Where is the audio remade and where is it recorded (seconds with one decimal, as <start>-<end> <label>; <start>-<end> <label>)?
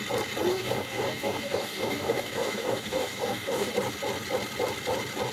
0.0-0.5 recorded; 0.5-3.7 remade; 3.7-5.3 recorded